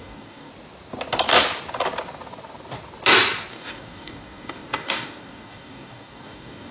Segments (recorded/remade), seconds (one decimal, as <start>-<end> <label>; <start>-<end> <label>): 0.0-0.5 remade; 0.5-3.5 recorded; 3.5-6.7 remade